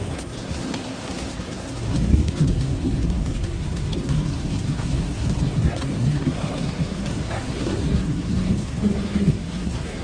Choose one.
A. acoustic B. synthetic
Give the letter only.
B